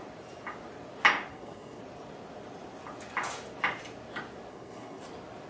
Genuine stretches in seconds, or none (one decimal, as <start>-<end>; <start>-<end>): 0.0-1.3; 1.8-4.5; 5.0-5.5